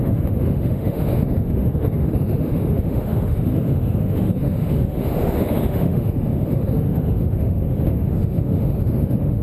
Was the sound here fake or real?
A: fake